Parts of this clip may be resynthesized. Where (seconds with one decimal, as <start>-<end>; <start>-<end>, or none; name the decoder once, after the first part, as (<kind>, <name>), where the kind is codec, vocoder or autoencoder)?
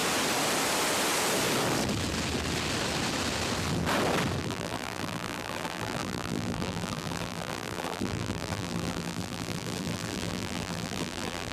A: 4.4-11.5 (vocoder, BigVGAN v2)